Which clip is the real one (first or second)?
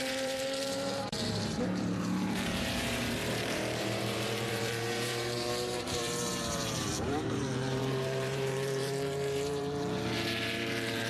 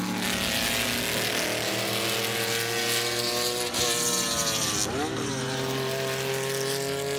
second